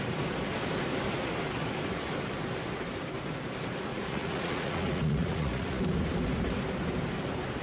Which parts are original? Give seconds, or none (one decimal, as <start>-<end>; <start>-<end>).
0.0-3.9; 5.8-7.6